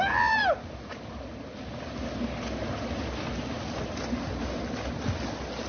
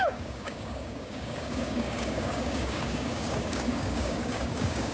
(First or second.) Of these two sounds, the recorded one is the first